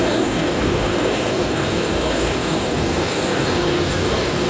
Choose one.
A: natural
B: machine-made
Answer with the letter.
B